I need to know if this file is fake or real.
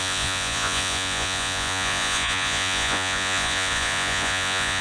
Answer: fake